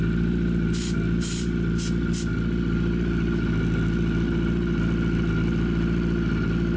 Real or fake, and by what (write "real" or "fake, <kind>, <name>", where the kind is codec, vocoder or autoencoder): real